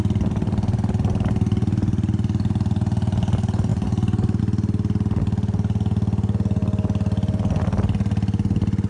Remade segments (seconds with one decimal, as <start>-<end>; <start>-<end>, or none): 3.7-4.4